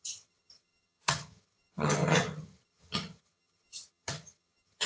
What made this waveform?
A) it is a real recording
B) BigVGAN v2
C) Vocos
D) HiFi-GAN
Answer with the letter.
D